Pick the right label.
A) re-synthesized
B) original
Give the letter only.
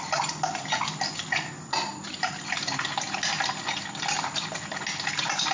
B